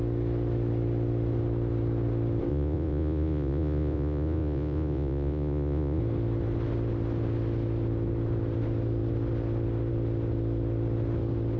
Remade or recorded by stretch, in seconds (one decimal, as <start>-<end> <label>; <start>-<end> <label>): 0.0-2.5 recorded; 2.5-6.0 remade; 6.0-11.6 recorded